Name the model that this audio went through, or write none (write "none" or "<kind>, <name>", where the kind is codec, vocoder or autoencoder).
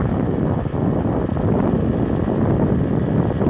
none